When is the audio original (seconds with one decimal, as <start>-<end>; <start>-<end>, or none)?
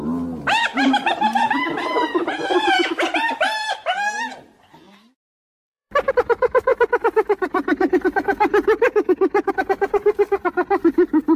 0.0-0.7; 2.9-5.5; 6.1-11.4